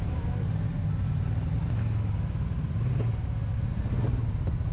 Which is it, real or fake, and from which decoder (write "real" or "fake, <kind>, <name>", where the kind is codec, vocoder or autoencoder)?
real